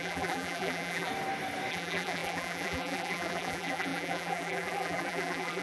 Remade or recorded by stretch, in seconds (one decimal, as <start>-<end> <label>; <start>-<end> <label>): 0.0-1.1 remade; 1.1-1.7 recorded; 1.7-5.6 remade